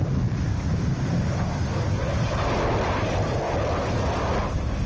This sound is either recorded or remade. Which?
recorded